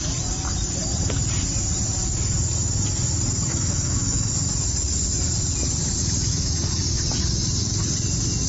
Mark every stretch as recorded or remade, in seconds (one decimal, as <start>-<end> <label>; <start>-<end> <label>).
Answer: 0.0-3.5 recorded; 3.5-4.3 remade; 4.3-6.3 recorded; 6.3-6.8 remade; 6.8-8.5 recorded